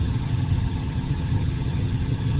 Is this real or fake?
fake